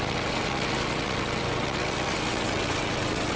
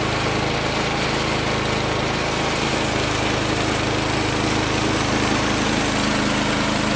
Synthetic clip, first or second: first